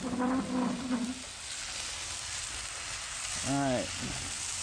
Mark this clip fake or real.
real